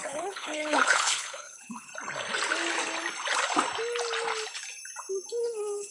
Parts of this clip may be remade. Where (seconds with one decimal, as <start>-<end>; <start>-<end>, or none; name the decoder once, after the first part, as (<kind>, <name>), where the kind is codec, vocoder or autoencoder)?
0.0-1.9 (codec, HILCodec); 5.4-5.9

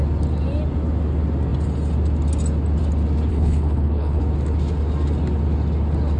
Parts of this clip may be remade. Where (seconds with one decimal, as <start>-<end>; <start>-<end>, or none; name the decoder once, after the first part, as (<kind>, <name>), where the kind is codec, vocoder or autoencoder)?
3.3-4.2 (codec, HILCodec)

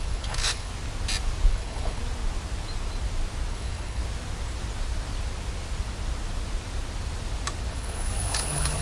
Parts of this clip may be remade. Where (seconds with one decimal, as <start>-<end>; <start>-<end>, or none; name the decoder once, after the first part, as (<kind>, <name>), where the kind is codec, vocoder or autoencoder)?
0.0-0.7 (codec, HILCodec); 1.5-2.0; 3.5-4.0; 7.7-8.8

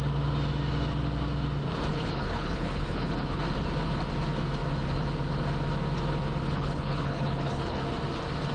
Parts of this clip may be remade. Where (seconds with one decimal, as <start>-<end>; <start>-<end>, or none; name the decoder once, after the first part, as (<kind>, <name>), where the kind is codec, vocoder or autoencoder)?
1.9-3.4 (codec, HILCodec); 6.4-7.8

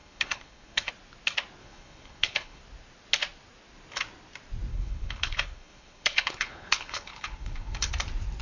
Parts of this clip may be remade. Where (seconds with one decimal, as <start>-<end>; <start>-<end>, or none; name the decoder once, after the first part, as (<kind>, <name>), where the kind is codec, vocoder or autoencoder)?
0.0-0.9 (codec, HILCodec); 1.6-2.6; 4.7-7.9